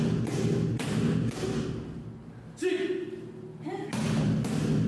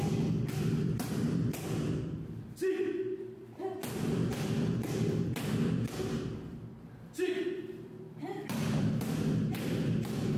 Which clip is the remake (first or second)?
second